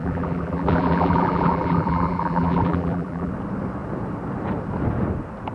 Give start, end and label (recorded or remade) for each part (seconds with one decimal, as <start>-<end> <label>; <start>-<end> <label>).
0.0-3.3 remade; 3.3-5.5 recorded